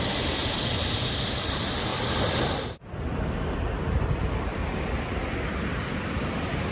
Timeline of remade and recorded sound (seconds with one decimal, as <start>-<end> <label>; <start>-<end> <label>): 0.0-4.6 remade; 4.6-5.5 recorded; 5.5-6.7 remade